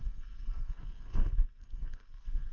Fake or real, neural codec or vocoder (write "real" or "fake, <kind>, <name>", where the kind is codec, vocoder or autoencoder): fake, codec, SNAC